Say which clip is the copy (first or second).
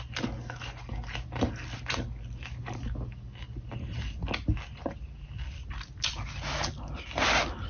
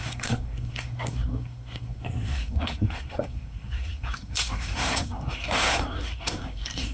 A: second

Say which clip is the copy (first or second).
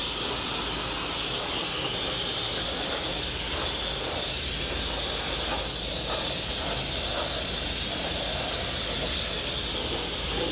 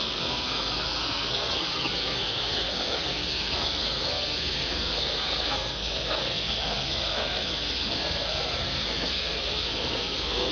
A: second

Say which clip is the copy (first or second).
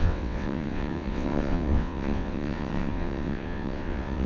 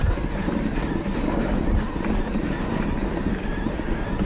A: first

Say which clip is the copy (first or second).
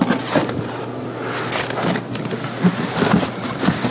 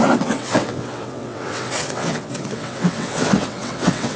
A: second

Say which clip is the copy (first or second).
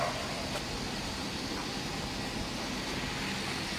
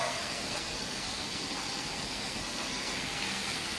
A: second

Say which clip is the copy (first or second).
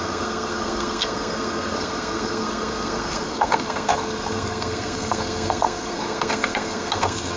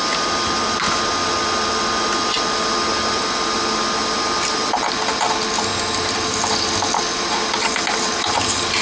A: first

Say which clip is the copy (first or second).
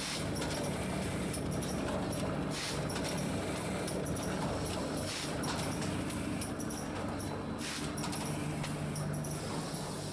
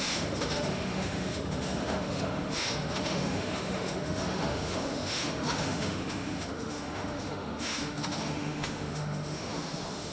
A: second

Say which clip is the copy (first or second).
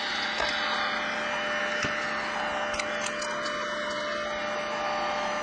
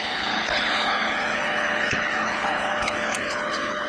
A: second